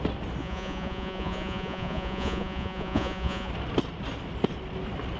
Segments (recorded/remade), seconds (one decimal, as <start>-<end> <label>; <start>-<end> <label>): 0.0-0.4 recorded; 0.4-3.5 remade; 3.5-5.2 recorded